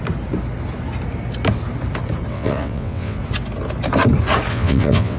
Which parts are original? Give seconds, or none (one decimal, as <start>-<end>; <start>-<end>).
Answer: 0.0-2.3; 3.2-4.5